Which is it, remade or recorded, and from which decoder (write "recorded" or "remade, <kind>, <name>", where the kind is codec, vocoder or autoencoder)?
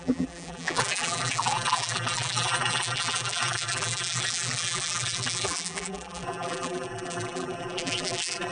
remade, vocoder, BigVGAN v2